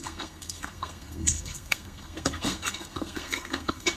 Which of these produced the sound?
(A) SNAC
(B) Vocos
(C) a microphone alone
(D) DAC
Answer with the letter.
A